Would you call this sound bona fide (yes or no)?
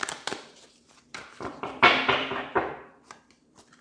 no